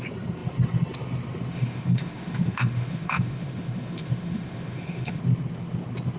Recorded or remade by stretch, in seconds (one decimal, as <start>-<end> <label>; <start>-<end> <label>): 0.0-1.5 recorded; 1.5-5.2 remade; 5.2-6.2 recorded